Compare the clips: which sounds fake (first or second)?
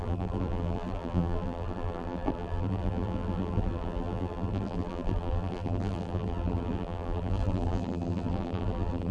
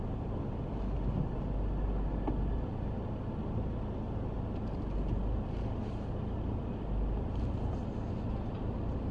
first